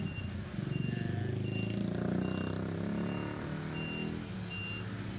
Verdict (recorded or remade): recorded